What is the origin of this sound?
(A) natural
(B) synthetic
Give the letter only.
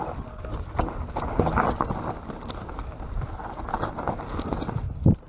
A